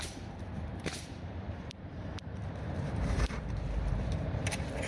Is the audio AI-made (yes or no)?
yes